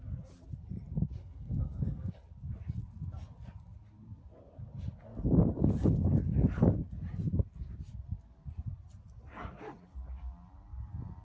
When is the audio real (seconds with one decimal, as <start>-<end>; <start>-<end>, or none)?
0.0-1.2; 2.1-11.2